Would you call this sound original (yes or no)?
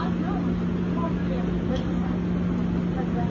yes